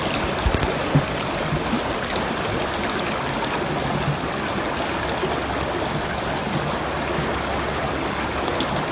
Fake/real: real